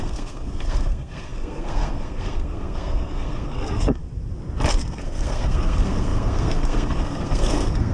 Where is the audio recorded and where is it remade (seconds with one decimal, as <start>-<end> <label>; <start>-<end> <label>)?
0.0-4.0 remade; 4.0-4.8 recorded; 4.8-7.9 remade